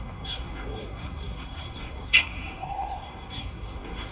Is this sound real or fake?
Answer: fake